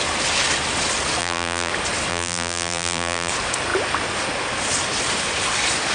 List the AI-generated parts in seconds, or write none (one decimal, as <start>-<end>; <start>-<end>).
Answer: 1.2-1.7; 2.1-3.3